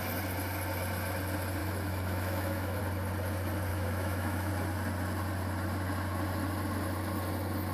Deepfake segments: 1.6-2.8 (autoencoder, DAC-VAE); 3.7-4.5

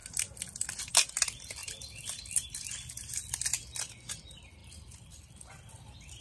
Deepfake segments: 1.6-2.7 (vocoder, BigVGAN v2); 4.6-5.2